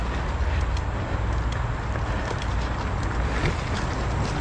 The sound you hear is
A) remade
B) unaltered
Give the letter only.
B